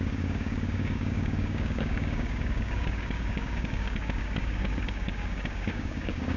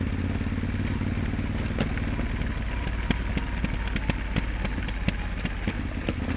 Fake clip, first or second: first